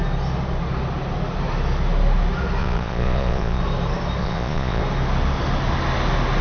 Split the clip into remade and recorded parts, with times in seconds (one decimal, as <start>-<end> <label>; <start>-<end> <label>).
0.0-2.6 recorded; 2.6-3.6 remade; 3.6-4.2 recorded; 4.2-4.8 remade; 4.8-6.4 recorded